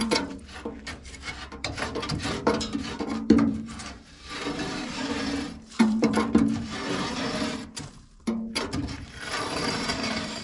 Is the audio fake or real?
fake